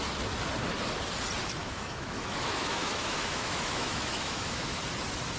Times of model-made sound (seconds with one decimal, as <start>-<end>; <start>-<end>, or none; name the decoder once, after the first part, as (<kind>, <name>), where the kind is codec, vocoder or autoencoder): 1.6-4.8 (autoencoder, DAC-VAE)